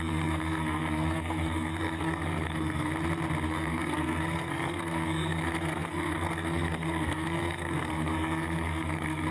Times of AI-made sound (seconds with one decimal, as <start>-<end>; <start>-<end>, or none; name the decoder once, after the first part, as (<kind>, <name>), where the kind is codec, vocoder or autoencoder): 0.0-2.9 (codec, SNAC); 3.5-9.3